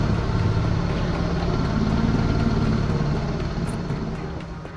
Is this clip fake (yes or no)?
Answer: no